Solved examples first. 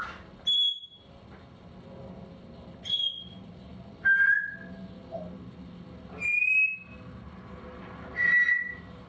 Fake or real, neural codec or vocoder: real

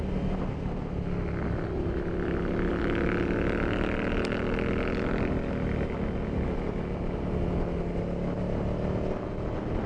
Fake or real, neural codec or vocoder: real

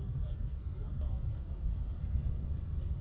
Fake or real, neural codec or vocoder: fake, codec, SNAC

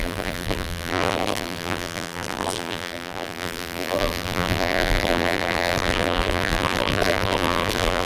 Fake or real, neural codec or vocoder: fake, vocoder, BigVGAN v2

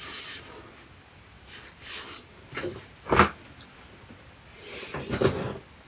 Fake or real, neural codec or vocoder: real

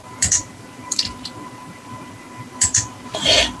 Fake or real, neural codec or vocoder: fake, vocoder, BigVGAN v2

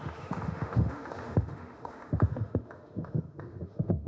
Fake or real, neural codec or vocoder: fake, autoencoder, DAC-VAE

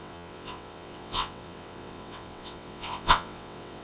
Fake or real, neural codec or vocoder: fake, vocoder, WaveNeXt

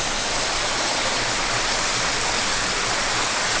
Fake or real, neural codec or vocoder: real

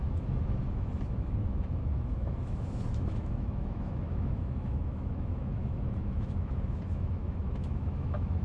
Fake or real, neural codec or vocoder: fake, autoencoder, DAC-VAE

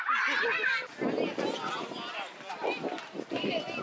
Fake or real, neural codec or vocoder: real